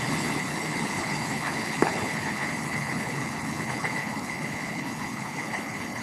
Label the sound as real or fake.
fake